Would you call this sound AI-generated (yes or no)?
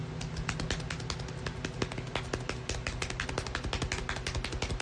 no